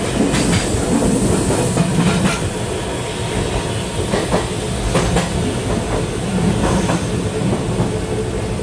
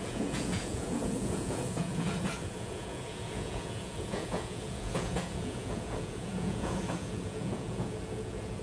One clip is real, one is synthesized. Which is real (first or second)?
first